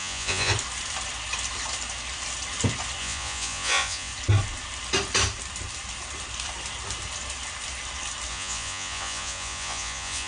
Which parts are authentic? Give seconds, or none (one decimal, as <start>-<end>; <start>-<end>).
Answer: 0.5-3.0; 4.1-8.3